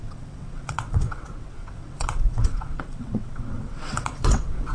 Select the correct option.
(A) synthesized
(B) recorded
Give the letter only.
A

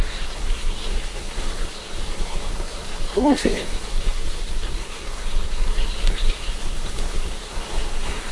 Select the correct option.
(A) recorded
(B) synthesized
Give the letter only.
B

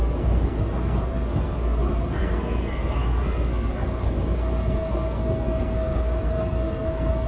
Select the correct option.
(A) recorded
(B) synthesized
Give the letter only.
B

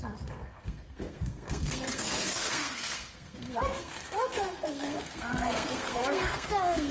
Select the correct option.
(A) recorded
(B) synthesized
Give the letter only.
B